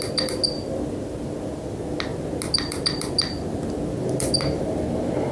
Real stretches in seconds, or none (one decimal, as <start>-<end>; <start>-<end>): 0.0-5.3